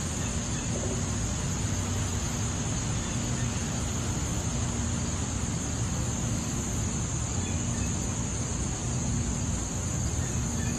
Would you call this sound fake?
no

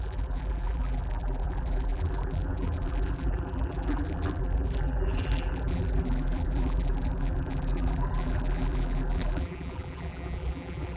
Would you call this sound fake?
yes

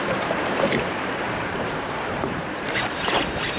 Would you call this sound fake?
yes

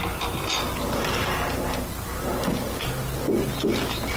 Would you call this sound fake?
no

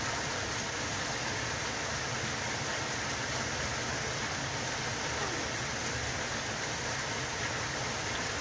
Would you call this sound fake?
no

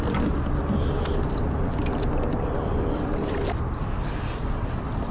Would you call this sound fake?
no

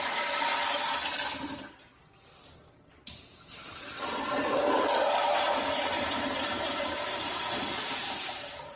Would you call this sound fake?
yes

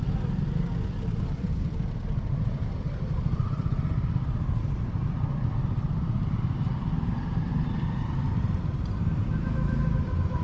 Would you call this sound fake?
yes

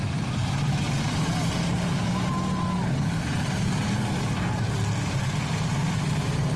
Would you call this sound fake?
yes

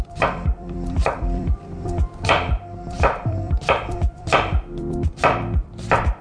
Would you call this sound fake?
yes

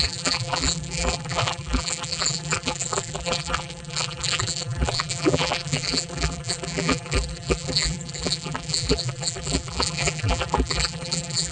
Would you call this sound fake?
yes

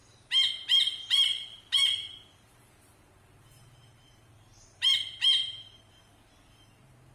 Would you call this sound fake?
yes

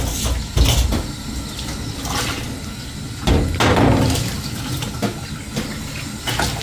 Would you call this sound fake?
no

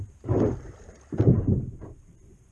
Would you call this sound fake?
yes